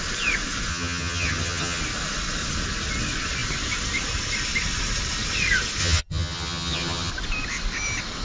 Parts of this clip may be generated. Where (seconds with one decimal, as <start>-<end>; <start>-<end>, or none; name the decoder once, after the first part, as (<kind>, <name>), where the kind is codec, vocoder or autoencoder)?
0.7-1.8 (vocoder, HiFi-GAN); 5.8-7.1